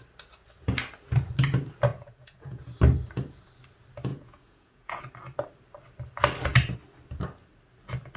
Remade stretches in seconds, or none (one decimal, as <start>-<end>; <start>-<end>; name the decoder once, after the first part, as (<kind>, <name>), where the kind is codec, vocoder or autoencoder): 1.9-2.6 (vocoder, Vocos); 4.1-5.0